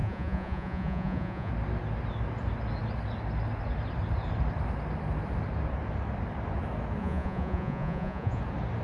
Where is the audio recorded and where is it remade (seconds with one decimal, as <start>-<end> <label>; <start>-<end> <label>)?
0.0-1.5 remade; 1.5-7.0 recorded; 7.0-8.4 remade; 8.4-8.8 recorded